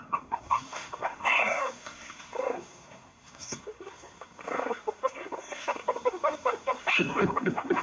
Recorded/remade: remade